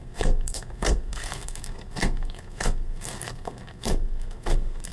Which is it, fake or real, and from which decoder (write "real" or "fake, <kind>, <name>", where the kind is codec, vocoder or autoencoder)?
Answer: fake, codec, SNAC